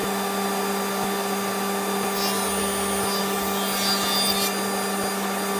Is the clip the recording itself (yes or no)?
yes